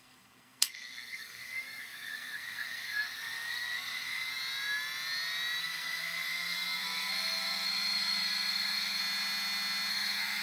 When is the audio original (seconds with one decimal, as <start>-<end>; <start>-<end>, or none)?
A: 4.3-5.6; 9.0-9.9